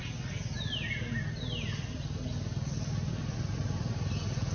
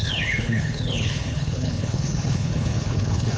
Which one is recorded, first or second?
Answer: first